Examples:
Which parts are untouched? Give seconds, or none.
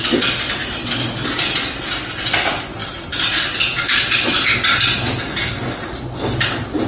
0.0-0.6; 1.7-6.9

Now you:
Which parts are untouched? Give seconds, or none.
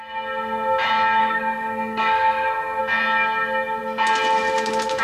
0.0-1.2; 2.8-5.0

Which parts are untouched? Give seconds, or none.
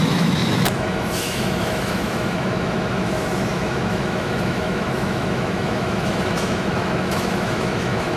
none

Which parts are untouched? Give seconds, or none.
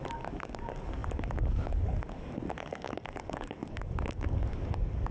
none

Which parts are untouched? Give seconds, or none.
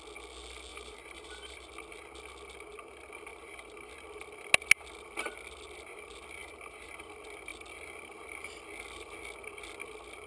0.0-0.7; 1.7-3.3; 3.9-6.4; 7.1-10.3